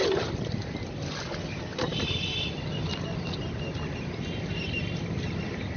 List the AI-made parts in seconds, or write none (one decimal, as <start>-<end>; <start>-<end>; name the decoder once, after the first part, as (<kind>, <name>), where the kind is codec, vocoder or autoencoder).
none